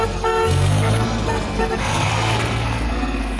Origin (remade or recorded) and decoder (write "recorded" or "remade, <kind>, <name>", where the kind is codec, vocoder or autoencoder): remade, codec, SNAC